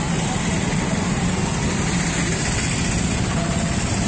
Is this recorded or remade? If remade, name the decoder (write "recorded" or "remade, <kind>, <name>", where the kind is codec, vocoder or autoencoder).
recorded